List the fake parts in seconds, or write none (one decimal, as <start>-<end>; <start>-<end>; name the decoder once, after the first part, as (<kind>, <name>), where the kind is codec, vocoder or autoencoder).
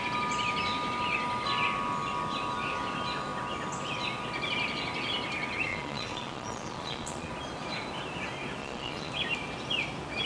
5.7-7.3 (vocoder, Vocos); 8.6-9.1